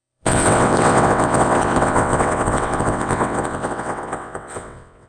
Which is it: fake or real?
fake